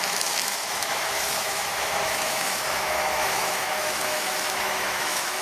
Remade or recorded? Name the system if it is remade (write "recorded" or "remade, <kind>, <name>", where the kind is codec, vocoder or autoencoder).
remade, autoencoder, DAC-VAE